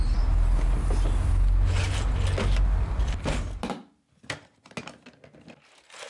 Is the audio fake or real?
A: real